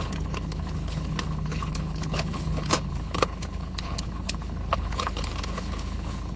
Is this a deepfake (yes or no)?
yes